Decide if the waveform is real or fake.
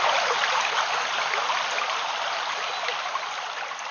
real